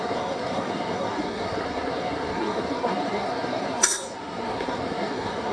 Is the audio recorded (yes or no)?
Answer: no